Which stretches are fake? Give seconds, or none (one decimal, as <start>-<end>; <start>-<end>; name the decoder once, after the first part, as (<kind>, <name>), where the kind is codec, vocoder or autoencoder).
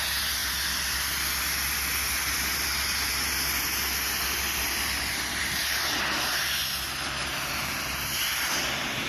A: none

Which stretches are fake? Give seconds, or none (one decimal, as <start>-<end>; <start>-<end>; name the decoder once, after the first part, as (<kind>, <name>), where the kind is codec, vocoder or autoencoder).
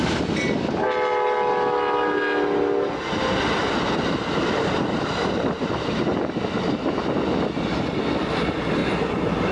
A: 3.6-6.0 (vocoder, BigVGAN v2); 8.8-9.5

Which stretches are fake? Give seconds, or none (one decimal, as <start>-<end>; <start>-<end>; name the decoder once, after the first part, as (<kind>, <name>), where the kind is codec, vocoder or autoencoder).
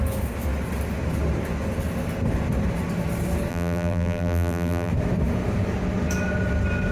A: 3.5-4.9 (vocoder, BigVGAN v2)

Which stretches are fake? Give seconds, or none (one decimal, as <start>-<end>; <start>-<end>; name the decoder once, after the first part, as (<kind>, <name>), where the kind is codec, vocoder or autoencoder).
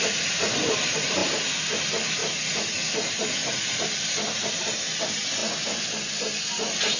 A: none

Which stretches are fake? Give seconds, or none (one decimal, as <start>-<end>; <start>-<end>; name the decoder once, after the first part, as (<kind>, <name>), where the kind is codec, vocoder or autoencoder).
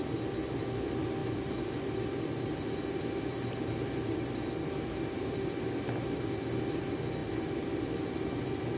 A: 0.0-8.8 (vocoder, BigVGAN v2)